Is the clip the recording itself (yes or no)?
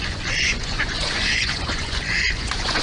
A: no